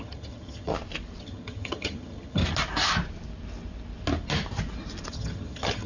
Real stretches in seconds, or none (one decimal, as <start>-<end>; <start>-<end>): 0.7-1.2; 2.4-5.1